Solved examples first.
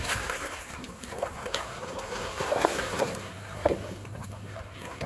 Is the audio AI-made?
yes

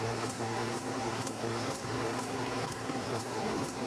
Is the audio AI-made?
yes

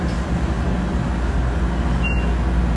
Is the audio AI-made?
no